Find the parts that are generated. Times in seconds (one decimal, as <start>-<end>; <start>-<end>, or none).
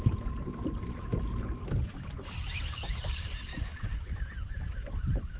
0.0-5.4